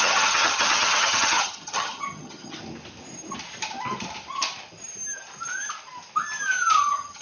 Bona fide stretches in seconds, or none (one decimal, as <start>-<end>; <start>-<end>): 2.6-6.8